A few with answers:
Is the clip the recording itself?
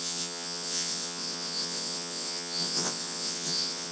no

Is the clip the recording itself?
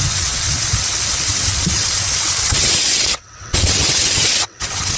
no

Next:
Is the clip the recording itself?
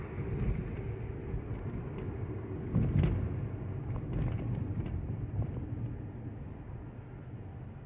yes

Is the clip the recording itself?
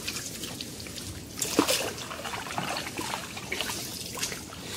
yes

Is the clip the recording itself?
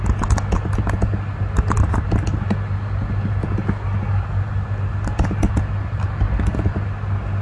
yes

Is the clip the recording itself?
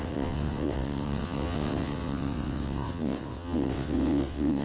no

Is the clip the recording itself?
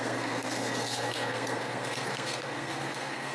no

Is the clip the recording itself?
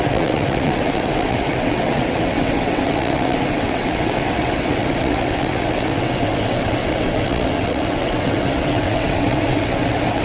no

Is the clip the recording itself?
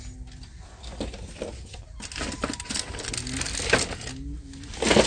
yes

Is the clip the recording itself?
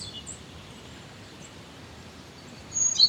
no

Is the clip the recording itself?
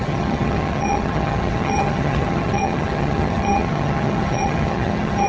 no